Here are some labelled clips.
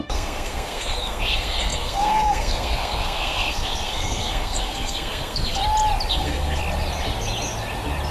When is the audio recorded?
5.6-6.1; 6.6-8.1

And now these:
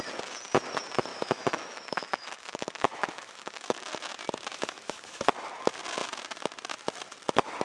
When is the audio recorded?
0.0-1.1; 4.1-4.5; 5.2-7.6

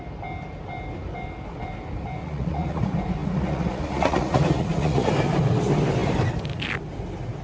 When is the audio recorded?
0.0-2.2; 2.8-3.2; 5.1-7.4

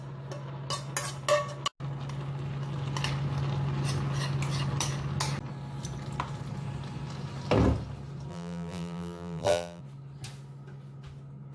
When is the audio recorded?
0.0-8.3; 9.8-11.5

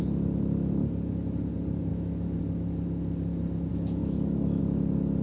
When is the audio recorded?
0.0-1.9; 2.4-3.7; 4.6-5.2